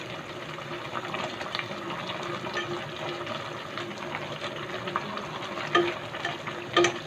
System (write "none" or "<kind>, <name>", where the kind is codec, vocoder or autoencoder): none